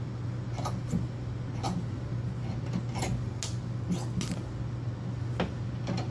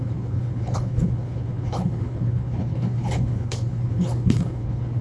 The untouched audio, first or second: first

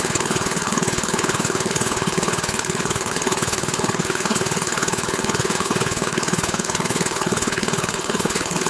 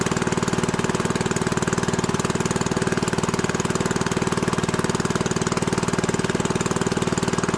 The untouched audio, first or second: second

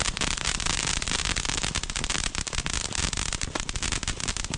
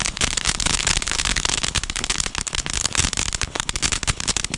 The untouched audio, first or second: first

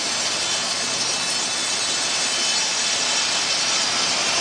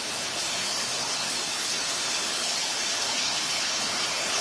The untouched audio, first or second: first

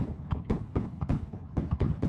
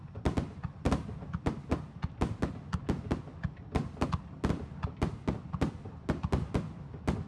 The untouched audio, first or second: second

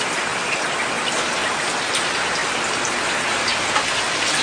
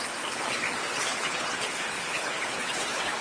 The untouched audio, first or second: first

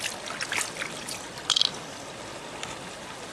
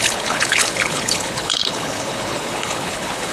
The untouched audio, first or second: first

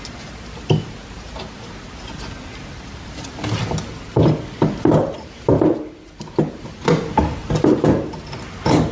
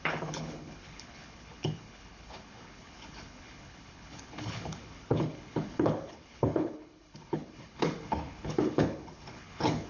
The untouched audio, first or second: first